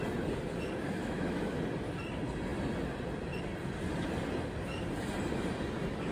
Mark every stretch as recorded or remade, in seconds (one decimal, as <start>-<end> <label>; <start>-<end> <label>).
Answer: 0.0-1.0 recorded; 1.0-1.6 remade; 1.6-6.1 recorded